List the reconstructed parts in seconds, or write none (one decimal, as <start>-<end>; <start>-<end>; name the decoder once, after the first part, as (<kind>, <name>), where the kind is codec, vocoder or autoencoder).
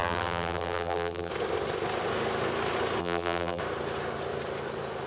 0.0-1.3 (vocoder, BigVGAN v2); 3.0-3.6